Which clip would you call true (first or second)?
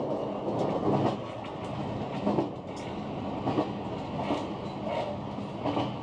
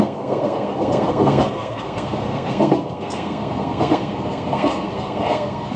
first